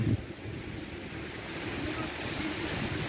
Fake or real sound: real